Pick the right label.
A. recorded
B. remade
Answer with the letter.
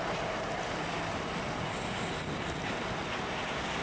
A